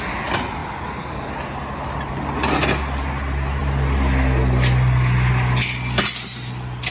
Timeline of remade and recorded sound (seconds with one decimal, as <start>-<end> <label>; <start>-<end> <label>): 0.0-6.9 recorded